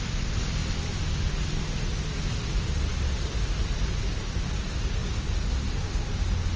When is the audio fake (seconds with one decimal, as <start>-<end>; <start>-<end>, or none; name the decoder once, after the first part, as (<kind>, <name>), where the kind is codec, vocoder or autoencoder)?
none